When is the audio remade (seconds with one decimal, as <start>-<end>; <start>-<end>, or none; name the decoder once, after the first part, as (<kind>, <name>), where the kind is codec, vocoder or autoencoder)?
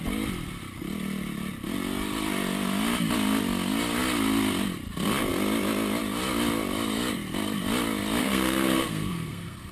8.2-9.7 (codec, SNAC)